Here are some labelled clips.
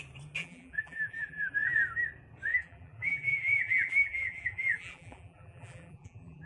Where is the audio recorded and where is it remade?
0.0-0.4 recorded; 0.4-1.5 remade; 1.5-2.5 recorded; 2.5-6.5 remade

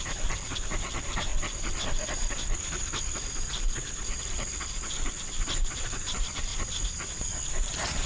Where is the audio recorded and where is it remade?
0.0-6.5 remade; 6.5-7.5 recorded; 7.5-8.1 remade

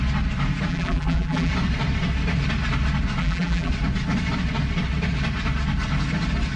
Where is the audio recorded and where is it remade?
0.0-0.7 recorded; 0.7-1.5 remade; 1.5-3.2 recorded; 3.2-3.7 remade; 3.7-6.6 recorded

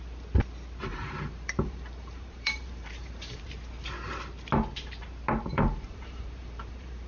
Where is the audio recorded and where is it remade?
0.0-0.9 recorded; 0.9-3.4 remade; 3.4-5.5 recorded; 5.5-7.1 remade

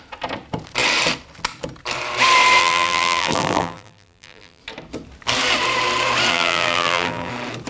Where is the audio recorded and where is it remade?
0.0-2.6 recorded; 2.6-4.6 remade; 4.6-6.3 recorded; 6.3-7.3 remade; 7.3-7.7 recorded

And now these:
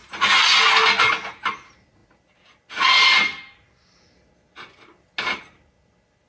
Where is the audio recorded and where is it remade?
0.0-6.3 recorded